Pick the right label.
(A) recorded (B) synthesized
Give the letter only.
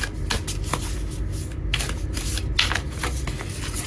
A